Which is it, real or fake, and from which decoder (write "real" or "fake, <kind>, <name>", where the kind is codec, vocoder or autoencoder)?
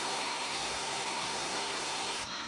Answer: fake, codec, SNAC